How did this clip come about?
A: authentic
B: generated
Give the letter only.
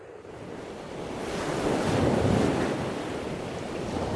B